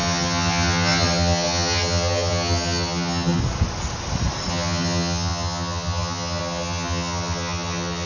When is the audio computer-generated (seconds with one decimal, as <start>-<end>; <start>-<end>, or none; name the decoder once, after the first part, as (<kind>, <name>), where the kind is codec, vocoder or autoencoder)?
0.0-3.4 (vocoder, HiFi-GAN); 4.5-8.1